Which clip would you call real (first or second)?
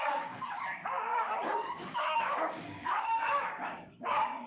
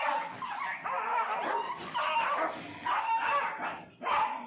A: second